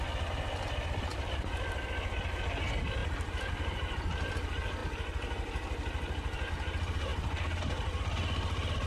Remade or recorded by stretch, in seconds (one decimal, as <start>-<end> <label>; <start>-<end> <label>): 0.0-1.1 recorded; 1.1-2.1 remade; 2.1-8.9 recorded